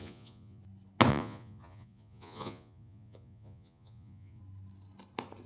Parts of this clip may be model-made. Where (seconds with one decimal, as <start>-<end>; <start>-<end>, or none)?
0.0-0.6; 1.1-4.4